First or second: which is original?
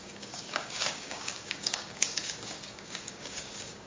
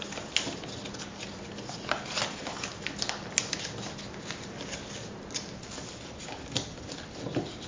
second